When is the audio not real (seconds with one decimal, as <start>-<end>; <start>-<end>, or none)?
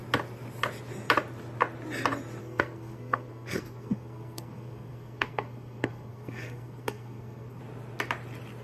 2.4-7.6